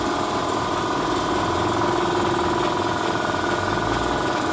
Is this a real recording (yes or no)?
yes